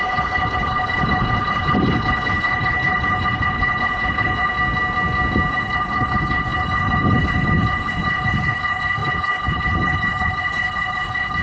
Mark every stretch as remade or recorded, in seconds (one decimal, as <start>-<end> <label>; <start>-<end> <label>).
0.0-4.5 remade; 4.5-5.5 recorded; 5.5-11.4 remade